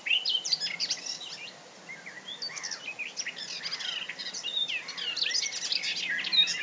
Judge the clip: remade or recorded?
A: recorded